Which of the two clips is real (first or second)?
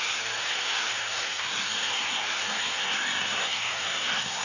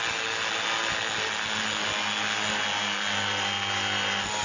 second